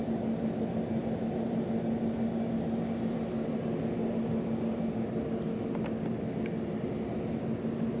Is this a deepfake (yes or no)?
no